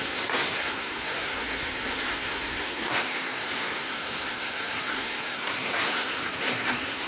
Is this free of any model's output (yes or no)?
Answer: no